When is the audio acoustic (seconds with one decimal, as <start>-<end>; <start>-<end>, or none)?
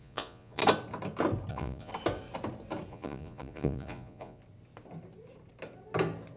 0.6-1.5; 1.9-2.9; 4.4-6.4